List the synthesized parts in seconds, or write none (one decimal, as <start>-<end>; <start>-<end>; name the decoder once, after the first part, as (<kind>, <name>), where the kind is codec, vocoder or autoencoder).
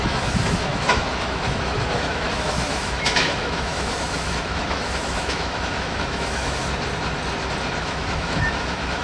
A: 0.0-6.6 (autoencoder, DAC-VAE); 7.8-9.0